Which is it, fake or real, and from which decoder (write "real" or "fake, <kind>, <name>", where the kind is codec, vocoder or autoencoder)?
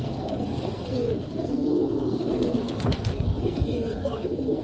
fake, codec, SNAC